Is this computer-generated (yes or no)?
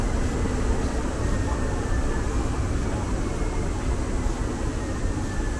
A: no